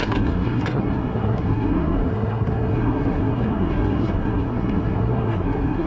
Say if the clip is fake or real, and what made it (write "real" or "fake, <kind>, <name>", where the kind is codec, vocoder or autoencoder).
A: fake, codec, SNAC